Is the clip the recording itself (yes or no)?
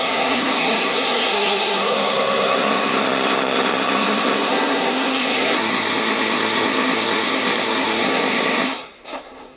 no